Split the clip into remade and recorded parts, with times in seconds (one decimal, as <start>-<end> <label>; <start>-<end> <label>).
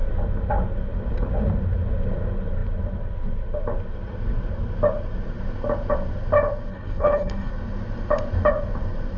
0.0-6.7 recorded; 6.7-7.5 remade; 7.5-9.2 recorded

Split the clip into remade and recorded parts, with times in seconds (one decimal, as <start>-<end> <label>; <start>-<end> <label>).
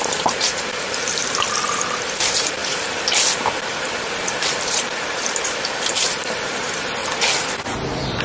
0.0-7.0 remade; 7.0-8.2 recorded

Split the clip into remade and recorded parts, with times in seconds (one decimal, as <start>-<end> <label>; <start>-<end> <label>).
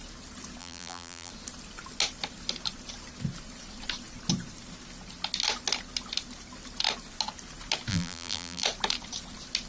0.0-0.6 recorded; 0.6-1.3 remade; 1.3-7.9 recorded; 7.9-8.6 remade; 8.6-9.7 recorded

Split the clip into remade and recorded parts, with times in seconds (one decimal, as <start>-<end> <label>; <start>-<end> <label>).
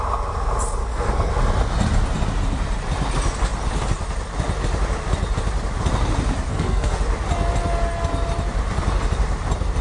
0.0-0.8 recorded; 0.8-1.3 remade; 1.3-6.5 recorded; 6.5-7.0 remade; 7.0-9.8 recorded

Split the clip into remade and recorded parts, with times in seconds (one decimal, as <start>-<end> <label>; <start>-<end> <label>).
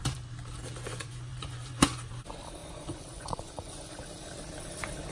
0.0-0.9 recorded; 0.9-2.1 remade; 2.1-2.6 recorded; 2.6-4.0 remade; 4.0-5.1 recorded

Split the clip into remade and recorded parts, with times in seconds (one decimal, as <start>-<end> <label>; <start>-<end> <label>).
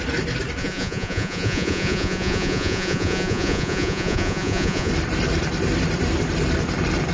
0.0-0.6 recorded; 0.6-4.9 remade; 4.9-7.1 recorded